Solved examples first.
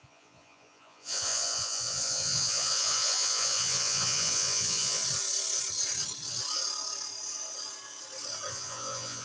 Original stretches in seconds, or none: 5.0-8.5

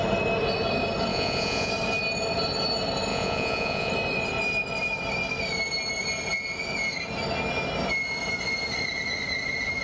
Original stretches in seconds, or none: 0.0-1.1; 1.7-3.1; 3.9-9.8

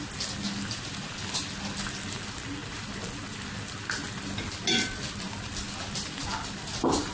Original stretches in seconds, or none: 0.0-7.1

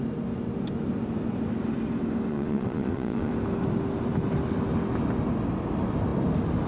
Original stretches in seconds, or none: 0.0-2.3; 3.3-6.7

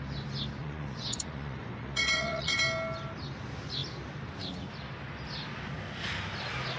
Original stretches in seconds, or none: 0.0-0.6; 2.6-6.8

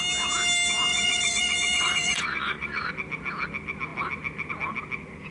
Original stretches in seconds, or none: 0.0-0.9; 2.9-5.3

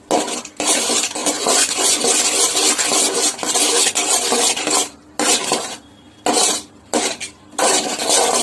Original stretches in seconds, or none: 0.0-1.2; 2.0-8.4